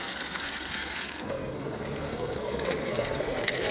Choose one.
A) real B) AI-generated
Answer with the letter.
B